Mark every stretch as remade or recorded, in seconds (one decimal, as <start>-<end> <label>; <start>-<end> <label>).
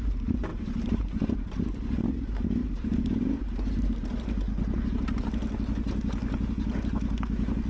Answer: 0.0-0.5 recorded; 0.5-1.6 remade; 1.6-2.6 recorded; 2.6-3.4 remade; 3.4-7.7 recorded